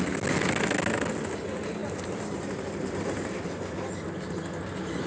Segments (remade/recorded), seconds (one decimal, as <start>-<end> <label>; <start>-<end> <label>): 0.0-1.8 recorded; 1.8-3.8 remade; 3.8-5.1 recorded